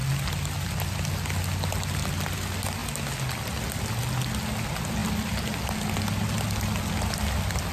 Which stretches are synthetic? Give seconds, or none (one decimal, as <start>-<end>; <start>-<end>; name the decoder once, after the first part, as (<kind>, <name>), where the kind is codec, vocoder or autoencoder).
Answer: none